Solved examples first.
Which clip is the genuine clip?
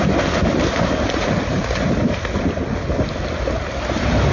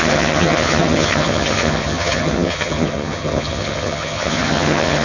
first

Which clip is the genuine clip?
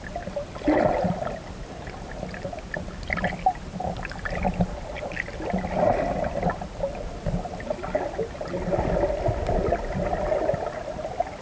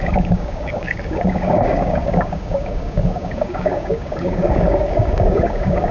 first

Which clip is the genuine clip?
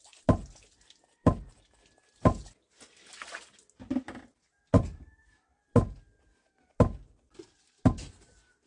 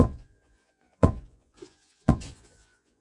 first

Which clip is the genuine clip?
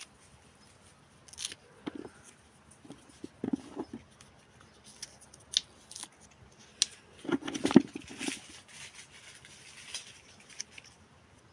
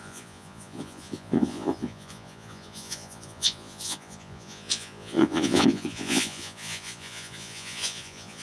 first